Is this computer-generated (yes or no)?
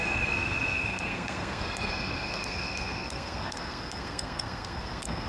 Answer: yes